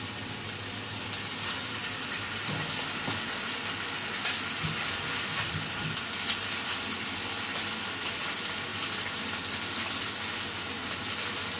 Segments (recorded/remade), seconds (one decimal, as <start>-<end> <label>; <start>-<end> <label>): 0.0-11.6 recorded

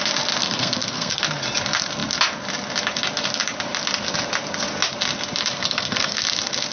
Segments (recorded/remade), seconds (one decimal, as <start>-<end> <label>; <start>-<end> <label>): 0.0-0.4 recorded; 0.4-1.2 remade; 1.2-5.6 recorded; 5.6-6.2 remade; 6.2-6.7 recorded

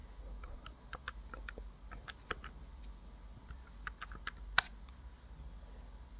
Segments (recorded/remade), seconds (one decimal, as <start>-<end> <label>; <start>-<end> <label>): 0.0-6.2 recorded

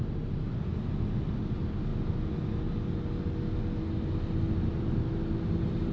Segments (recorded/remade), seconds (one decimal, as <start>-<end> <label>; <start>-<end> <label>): 0.0-5.9 recorded

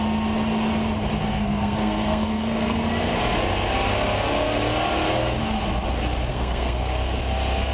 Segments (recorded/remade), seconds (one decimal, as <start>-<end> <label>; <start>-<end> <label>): 0.0-1.3 recorded; 1.3-2.8 remade; 2.8-6.3 recorded; 6.3-7.2 remade; 7.2-7.7 recorded

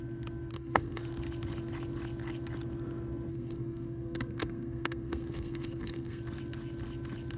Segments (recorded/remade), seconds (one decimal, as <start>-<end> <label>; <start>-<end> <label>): 0.0-0.5 recorded; 0.5-1.0 remade; 1.0-3.3 recorded; 3.3-6.2 remade; 6.2-7.4 recorded